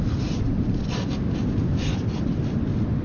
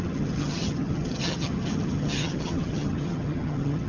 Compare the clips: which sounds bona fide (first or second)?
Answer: first